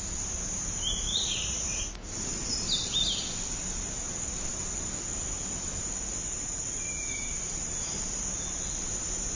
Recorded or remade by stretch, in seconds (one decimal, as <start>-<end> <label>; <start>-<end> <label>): 0.0-1.1 recorded; 1.1-1.8 remade; 1.8-6.2 recorded; 6.2-8.0 remade; 8.0-9.4 recorded